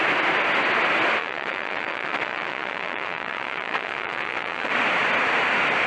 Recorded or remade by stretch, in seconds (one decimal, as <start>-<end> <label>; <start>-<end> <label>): 0.0-1.2 recorded; 1.2-4.7 remade; 4.7-5.9 recorded